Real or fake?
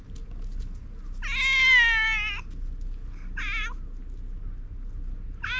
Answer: real